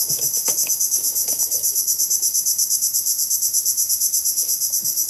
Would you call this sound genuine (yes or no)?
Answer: no